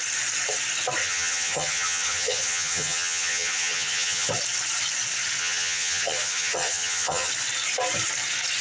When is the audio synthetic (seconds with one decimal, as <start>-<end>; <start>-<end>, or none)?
1.0-4.3; 5.4-7.3